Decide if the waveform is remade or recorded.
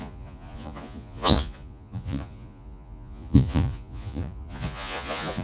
remade